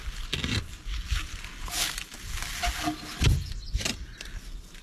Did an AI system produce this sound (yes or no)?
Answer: no